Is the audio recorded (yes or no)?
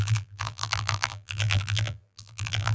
no